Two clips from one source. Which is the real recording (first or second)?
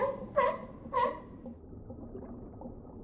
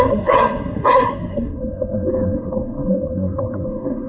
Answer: first